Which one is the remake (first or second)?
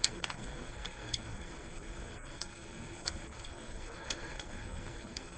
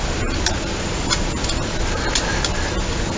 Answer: first